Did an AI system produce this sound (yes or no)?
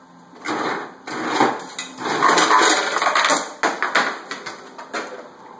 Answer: no